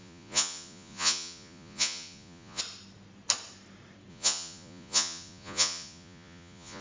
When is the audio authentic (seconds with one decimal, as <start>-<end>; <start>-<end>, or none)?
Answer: 2.6-4.1